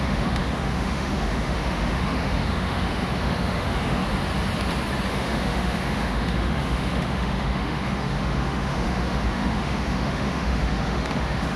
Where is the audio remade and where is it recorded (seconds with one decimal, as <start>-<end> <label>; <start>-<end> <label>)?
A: 0.0-4.0 remade; 4.0-5.1 recorded; 5.1-11.6 remade